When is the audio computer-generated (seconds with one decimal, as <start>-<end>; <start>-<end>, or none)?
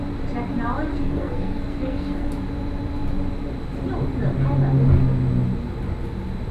0.9-2.3